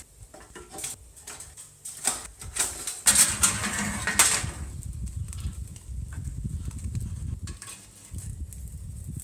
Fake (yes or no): no